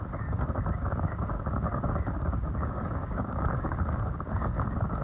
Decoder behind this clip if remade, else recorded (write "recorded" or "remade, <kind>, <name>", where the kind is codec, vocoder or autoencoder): remade, codec, DAC